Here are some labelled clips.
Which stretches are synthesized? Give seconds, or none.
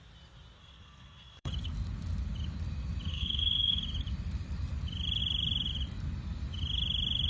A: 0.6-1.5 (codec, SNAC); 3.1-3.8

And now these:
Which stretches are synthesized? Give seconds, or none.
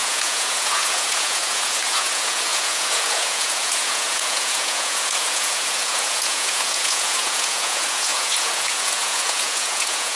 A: 0.0-10.2 (vocoder, Vocos)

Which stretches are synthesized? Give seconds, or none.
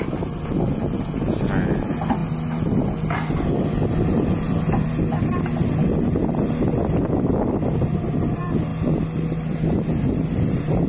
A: none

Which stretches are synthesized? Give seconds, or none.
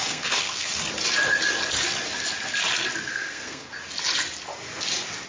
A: 0.0-0.8 (codec, SNAC); 3.1-3.7